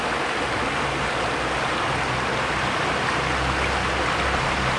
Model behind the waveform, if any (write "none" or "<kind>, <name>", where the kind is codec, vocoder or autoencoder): none